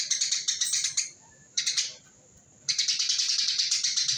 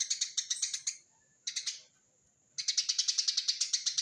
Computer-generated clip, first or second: first